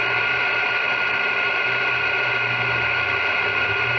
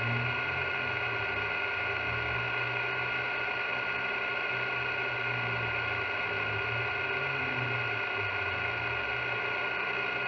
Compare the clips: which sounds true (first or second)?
second